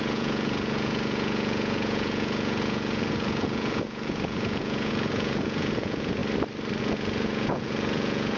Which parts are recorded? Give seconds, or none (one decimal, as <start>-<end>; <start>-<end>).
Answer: 6.2-6.8